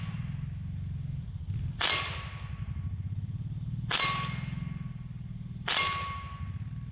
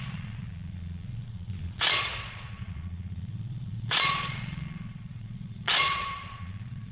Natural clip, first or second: first